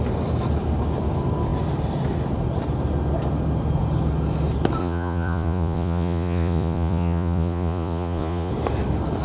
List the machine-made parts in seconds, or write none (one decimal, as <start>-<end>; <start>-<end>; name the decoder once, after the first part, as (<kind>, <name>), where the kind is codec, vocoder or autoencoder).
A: 4.8-8.5 (vocoder, Vocos)